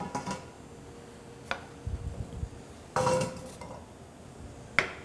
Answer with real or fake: real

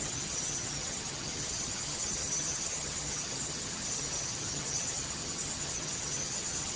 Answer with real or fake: fake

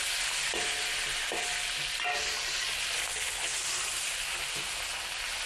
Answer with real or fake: real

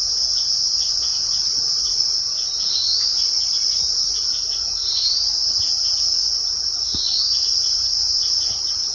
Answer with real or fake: fake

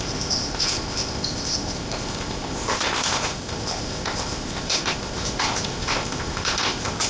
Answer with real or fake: fake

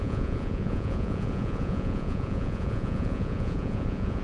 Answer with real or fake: fake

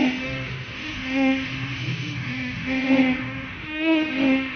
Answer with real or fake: fake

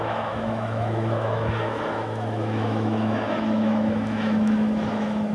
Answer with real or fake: fake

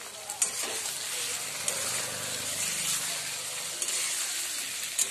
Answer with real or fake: real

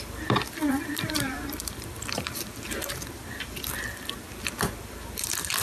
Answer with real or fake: fake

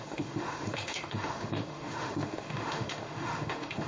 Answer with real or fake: fake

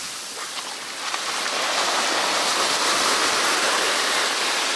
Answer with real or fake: real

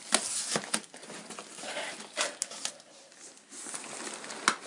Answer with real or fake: real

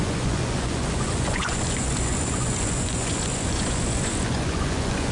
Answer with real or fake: fake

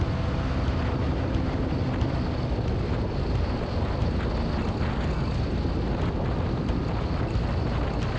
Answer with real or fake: real